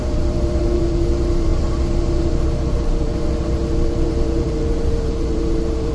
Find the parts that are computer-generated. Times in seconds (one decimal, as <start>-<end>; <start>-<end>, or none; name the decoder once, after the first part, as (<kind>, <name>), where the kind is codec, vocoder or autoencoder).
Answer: 0.0-5.9 (vocoder, BigVGAN v2)